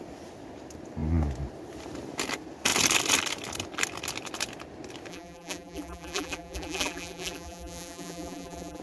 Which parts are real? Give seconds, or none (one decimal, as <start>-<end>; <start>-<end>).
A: 0.0-5.1